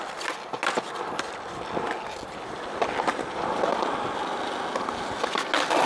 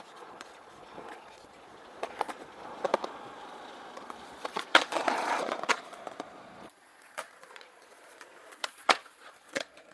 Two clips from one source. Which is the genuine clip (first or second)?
first